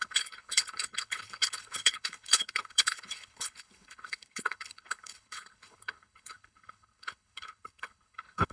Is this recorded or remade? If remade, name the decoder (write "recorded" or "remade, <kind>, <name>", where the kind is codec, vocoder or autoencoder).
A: remade, codec, HILCodec